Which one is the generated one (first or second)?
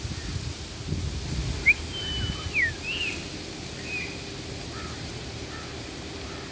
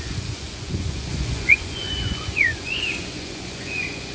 second